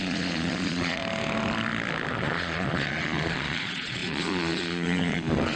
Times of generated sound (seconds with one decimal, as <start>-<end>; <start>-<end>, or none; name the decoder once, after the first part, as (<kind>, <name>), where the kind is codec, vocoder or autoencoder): 0.0-1.0 (vocoder, Vocos); 2.1-5.6